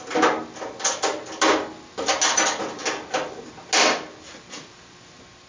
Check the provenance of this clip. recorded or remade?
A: recorded